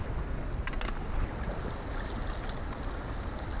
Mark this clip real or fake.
real